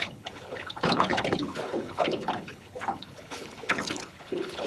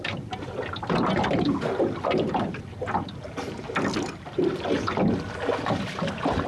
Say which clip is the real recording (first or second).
second